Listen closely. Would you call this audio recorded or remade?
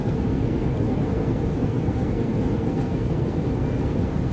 remade